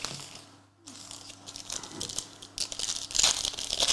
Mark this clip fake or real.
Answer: real